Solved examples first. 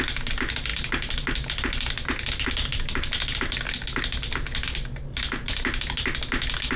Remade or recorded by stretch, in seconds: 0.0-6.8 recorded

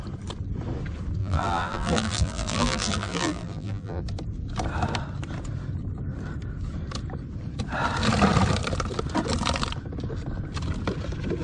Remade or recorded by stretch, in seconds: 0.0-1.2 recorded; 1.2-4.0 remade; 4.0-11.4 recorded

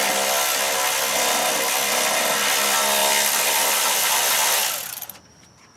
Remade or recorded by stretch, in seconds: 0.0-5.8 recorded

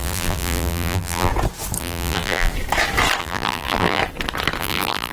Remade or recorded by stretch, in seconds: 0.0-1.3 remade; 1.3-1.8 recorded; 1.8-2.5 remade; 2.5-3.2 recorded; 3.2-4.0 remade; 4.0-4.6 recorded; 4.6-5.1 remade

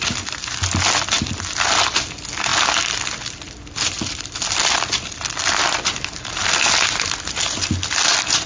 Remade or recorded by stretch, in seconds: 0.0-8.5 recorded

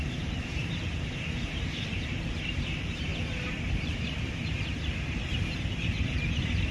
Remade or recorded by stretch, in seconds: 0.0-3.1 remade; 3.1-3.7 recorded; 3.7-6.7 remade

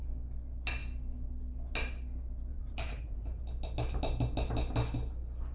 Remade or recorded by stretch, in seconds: 0.0-2.5 recorded; 2.5-3.4 remade; 3.4-5.5 recorded